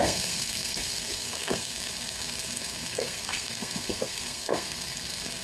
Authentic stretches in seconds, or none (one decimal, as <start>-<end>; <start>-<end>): none